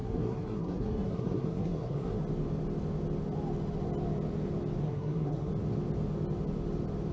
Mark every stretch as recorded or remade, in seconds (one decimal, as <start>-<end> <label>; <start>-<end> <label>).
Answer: 0.0-2.2 remade; 2.2-4.8 recorded; 4.8-5.5 remade; 5.5-7.1 recorded